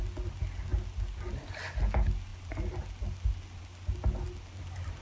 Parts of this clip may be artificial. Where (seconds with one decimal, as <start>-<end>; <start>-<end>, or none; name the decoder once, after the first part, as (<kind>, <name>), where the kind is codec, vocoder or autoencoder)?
none